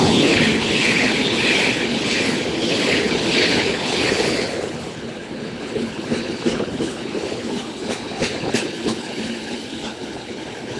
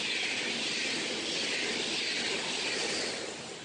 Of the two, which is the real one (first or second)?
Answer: second